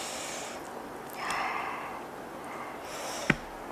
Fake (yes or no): no